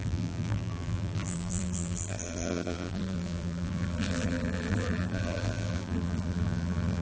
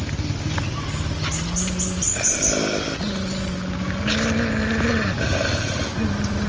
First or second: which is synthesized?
first